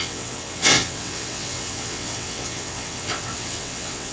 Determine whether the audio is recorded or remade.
remade